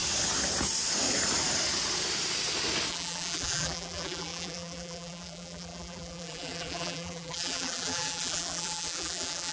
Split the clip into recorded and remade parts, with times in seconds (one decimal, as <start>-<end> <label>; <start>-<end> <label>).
0.0-2.9 recorded; 2.9-9.5 remade